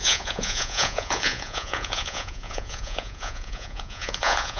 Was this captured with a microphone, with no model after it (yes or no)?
no